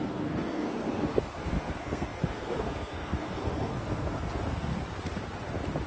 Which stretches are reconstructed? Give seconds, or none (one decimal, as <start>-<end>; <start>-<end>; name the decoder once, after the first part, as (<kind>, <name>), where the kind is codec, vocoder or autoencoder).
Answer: 0.0-4.7 (codec, SNAC)